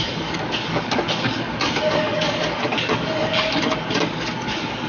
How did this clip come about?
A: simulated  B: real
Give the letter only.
A